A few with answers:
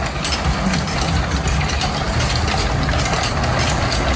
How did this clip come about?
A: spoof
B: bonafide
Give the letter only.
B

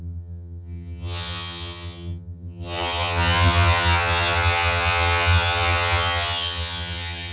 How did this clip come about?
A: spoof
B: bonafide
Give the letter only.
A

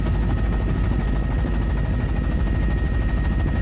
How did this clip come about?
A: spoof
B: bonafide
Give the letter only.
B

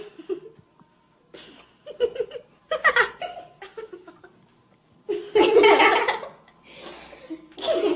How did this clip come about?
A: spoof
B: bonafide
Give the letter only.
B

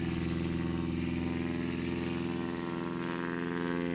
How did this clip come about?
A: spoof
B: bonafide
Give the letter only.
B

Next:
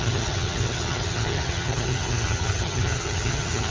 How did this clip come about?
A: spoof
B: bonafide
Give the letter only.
A